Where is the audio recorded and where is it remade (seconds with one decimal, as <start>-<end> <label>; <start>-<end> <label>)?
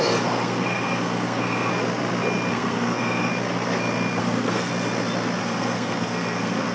0.0-1.7 remade; 1.7-2.5 recorded; 2.5-3.3 remade; 3.3-4.2 recorded; 4.2-4.7 remade; 4.7-5.4 recorded; 5.4-6.7 remade